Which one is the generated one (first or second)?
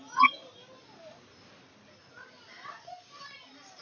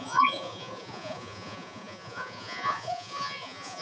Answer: second